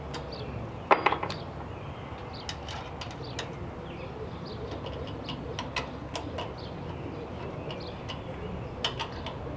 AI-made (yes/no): no